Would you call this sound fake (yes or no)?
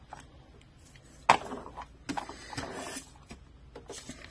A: no